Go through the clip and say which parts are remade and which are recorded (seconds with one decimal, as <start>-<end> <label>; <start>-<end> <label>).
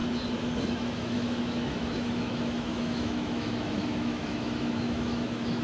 0.0-0.7 recorded; 0.7-5.6 remade